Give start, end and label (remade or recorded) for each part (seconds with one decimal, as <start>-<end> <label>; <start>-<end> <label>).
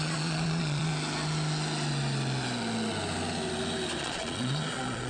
0.0-0.9 remade; 0.9-4.0 recorded; 4.0-5.1 remade